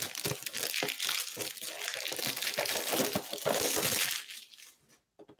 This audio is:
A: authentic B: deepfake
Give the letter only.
A